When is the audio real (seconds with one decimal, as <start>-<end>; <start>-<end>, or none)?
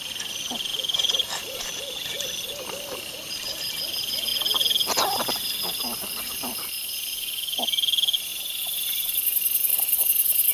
0.0-0.7; 1.7-8.3; 10.0-10.5